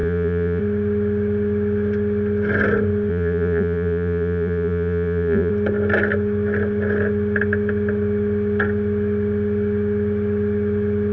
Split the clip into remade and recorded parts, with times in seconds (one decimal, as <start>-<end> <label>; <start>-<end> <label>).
0.0-0.6 remade; 0.6-3.1 recorded; 3.1-5.5 remade; 5.5-11.1 recorded